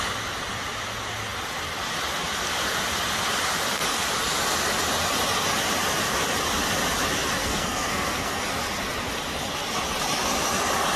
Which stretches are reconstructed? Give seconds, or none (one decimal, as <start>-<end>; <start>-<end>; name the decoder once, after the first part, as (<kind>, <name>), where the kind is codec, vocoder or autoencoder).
7.4-8.4 (codec, SNAC)